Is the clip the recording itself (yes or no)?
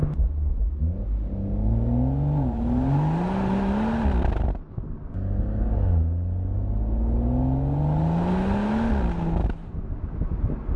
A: yes